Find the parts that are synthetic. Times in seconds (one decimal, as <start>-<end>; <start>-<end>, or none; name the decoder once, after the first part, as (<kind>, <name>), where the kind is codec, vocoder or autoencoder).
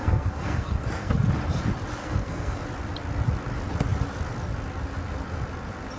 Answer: 0.0-1.1 (codec, SNAC); 2.0-2.6